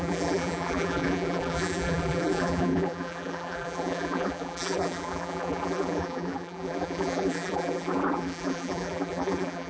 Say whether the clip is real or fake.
fake